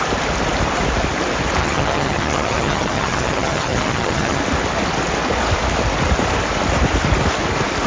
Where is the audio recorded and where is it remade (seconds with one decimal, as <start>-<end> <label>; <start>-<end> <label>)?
0.0-1.6 recorded; 1.6-4.4 remade; 4.4-7.9 recorded